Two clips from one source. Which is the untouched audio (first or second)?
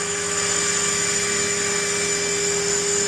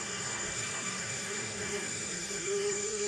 first